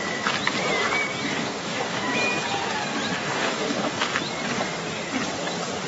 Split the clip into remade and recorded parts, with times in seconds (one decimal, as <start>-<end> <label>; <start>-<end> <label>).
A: 0.0-1.4 recorded; 1.4-2.0 remade; 2.0-3.2 recorded; 3.2-4.0 remade; 4.0-5.9 recorded